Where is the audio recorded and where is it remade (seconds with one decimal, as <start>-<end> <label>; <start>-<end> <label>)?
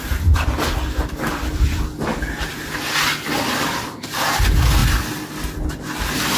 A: 0.0-6.4 recorded